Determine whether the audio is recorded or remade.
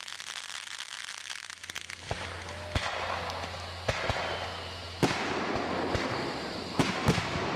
recorded